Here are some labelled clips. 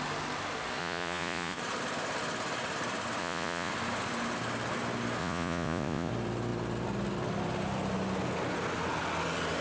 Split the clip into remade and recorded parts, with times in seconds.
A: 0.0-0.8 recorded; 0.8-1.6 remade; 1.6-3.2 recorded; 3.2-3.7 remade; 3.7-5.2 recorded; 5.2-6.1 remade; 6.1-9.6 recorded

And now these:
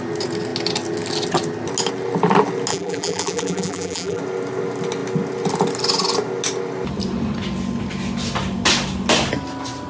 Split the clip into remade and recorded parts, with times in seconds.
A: 0.0-2.7 recorded; 2.7-4.2 remade; 4.2-9.9 recorded

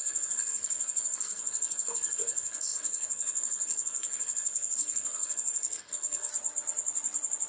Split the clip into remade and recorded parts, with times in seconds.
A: 0.0-6.3 remade; 6.3-7.5 recorded